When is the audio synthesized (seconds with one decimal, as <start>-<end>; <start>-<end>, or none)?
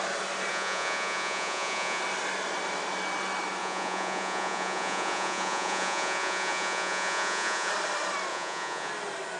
0.5-2.0; 3.6-7.7; 8.3-8.9